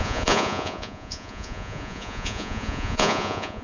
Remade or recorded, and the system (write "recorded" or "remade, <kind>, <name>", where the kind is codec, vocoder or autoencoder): remade, vocoder, Vocos